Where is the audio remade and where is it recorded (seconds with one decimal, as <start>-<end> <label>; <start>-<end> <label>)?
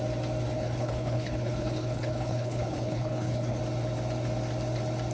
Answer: 0.0-0.5 recorded; 0.5-3.6 remade; 3.6-5.1 recorded